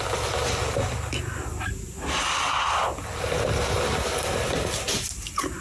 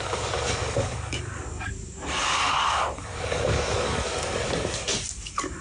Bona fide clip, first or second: first